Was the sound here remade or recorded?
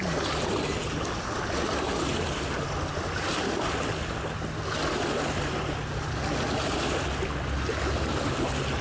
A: recorded